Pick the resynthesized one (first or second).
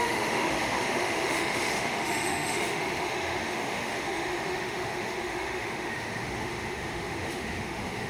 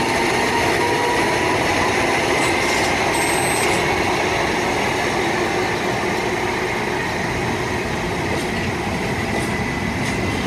first